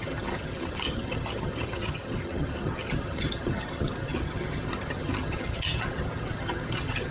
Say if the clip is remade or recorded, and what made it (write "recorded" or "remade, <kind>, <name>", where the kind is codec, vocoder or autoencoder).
remade, vocoder, HiFi-GAN